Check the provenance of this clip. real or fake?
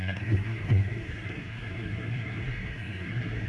fake